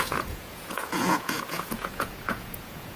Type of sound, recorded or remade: remade